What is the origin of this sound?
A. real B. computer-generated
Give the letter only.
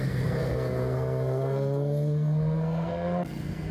B